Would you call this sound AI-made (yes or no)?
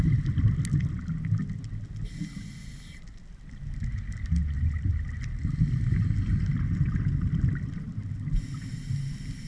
no